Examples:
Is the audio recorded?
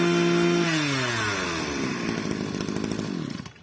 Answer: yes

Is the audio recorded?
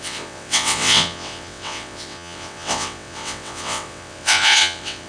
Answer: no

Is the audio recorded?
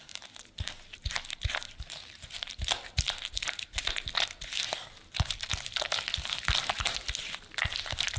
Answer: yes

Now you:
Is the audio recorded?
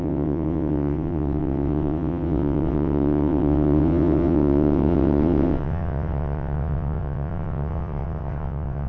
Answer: no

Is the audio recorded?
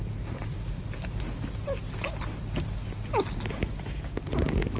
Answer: yes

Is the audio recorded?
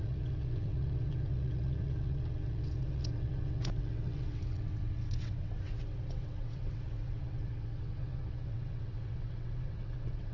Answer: no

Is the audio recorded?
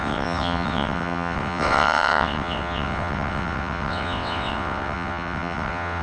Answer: no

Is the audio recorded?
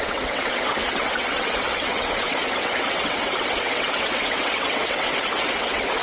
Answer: no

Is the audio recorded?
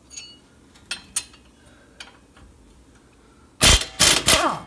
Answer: yes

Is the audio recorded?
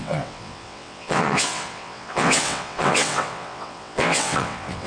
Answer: no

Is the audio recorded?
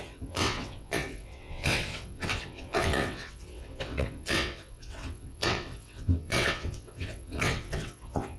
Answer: no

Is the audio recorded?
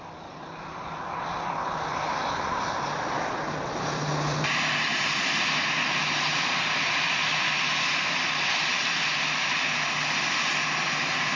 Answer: yes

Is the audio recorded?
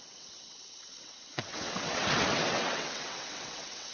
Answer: no